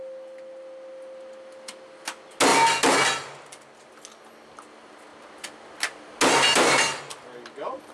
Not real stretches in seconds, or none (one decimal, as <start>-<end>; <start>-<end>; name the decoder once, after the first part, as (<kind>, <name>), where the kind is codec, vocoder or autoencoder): none